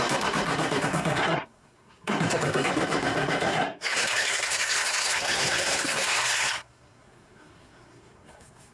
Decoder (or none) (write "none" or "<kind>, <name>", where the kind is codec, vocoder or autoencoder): codec, SNAC